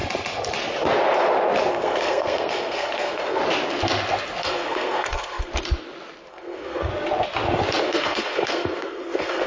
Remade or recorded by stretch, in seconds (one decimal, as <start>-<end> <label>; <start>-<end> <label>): 0.0-1.7 recorded; 1.7-3.4 remade; 3.4-4.4 recorded; 4.4-5.5 remade; 5.5-6.3 recorded; 6.3-6.9 remade; 6.9-7.8 recorded; 7.8-9.5 remade